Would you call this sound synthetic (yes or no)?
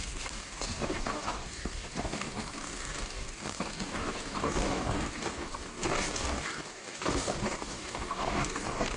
yes